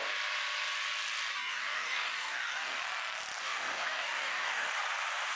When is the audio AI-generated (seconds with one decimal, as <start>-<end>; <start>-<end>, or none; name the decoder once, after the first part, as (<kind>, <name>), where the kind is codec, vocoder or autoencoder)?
1.3-2.8 (codec, DAC); 3.4-4.7